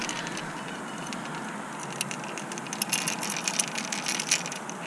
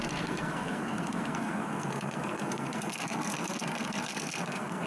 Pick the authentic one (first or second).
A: first